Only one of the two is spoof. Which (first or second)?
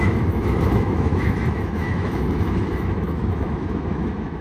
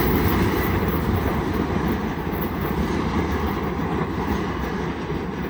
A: first